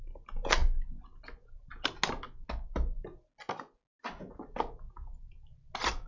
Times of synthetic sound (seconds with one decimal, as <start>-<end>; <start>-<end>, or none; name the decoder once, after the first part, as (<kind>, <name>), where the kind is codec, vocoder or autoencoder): none